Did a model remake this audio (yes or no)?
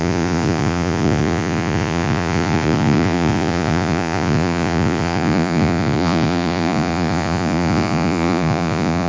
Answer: yes